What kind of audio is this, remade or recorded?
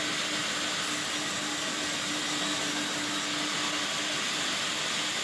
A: recorded